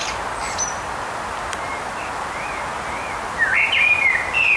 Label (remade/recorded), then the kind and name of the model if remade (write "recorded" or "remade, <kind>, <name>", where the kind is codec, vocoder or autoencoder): recorded